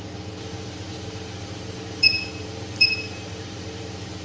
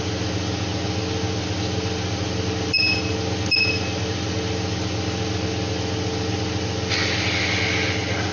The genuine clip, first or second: second